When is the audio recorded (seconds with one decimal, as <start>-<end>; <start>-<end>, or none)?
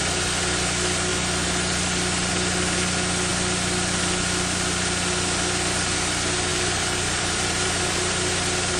0.0-1.1; 2.3-6.5; 7.7-8.8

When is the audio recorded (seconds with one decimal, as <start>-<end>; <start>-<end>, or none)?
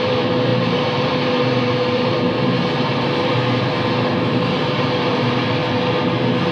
5.6-6.5